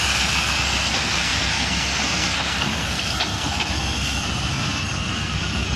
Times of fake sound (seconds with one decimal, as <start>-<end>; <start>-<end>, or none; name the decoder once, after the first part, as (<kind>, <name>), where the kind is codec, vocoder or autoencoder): 0.0-5.8 (codec, SNAC)